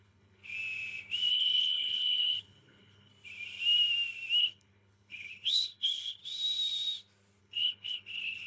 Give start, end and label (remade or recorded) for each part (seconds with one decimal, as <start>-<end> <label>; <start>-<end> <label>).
0.0-0.4 remade; 0.4-1.3 recorded; 1.3-3.1 remade; 3.1-4.4 recorded; 4.4-6.2 remade; 6.2-7.4 recorded; 7.4-8.5 remade